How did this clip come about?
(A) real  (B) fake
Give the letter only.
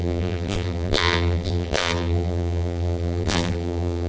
B